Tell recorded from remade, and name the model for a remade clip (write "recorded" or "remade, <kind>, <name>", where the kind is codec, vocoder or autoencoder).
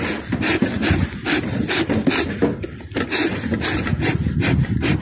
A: recorded